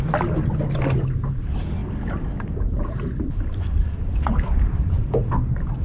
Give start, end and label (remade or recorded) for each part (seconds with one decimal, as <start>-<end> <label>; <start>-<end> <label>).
0.0-1.8 recorded; 1.8-5.3 remade; 5.3-5.8 recorded